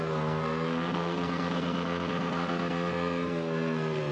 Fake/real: fake